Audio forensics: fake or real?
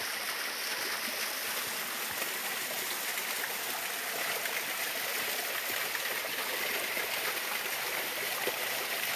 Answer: real